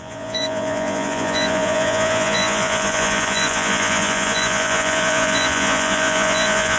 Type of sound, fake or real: fake